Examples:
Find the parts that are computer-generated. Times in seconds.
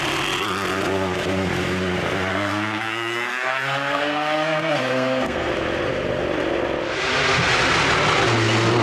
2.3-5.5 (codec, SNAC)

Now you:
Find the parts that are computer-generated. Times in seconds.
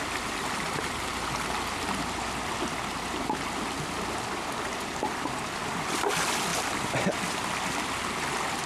none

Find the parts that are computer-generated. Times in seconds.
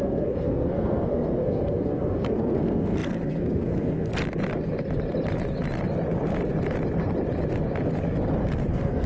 0.0-4.1 (codec, SNAC); 8.7-9.1